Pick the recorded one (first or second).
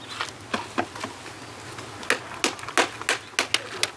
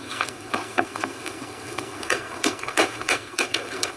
first